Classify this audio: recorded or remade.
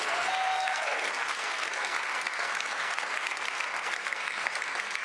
remade